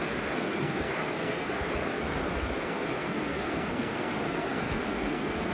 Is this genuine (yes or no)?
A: no